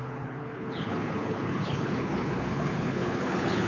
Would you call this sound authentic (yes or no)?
no